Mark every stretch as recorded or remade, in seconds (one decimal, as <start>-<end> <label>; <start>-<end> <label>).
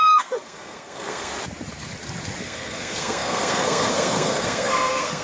0.0-1.3 remade; 1.3-2.4 recorded; 2.4-5.2 remade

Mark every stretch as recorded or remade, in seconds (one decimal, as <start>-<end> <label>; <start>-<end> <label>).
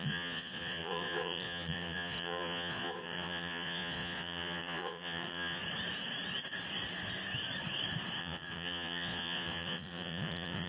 0.0-5.6 remade; 5.6-8.2 recorded; 8.2-10.7 remade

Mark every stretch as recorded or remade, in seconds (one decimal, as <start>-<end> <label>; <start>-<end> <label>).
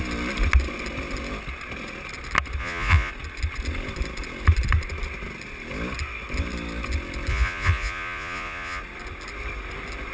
0.0-2.6 recorded; 2.6-3.1 remade; 3.1-7.3 recorded; 7.3-8.8 remade; 8.8-10.1 recorded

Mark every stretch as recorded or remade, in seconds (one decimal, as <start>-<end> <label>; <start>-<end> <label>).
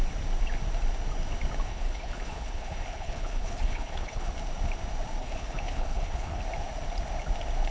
0.0-1.7 recorded; 1.7-4.3 remade; 4.3-5.2 recorded; 5.2-6.4 remade; 6.4-7.7 recorded